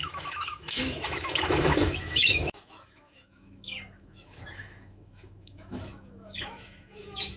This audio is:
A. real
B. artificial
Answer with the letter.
B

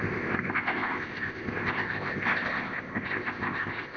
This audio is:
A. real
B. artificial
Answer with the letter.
B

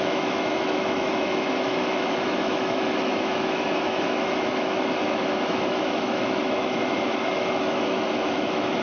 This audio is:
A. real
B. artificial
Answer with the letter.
B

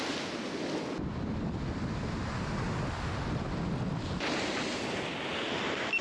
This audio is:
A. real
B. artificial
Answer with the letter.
A